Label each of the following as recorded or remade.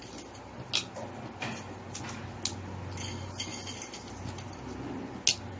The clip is recorded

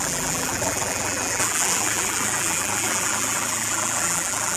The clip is remade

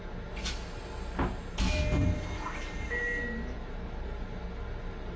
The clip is recorded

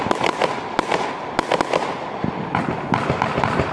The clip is recorded